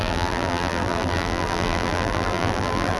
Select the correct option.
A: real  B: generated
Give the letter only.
B